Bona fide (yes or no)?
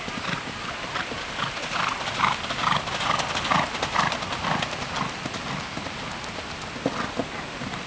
yes